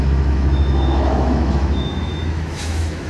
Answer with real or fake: fake